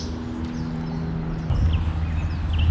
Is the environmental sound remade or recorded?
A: recorded